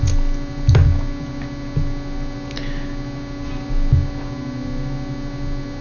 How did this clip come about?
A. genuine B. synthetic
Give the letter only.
A